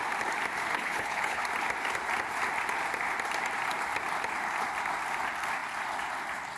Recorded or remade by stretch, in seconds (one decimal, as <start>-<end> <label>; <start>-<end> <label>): 0.0-0.7 recorded; 0.7-1.4 remade; 1.4-6.6 recorded